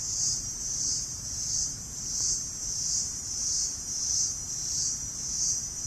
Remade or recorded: remade